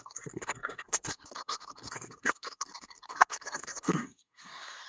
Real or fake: fake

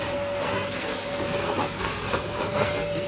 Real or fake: fake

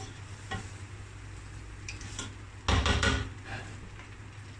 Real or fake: real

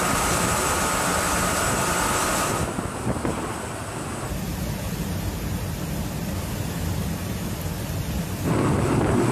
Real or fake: real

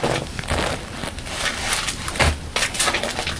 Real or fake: real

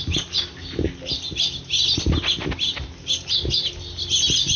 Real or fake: real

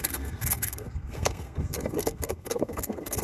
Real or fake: fake